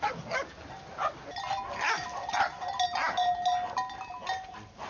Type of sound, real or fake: real